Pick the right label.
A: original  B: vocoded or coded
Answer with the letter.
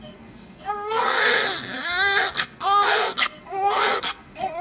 B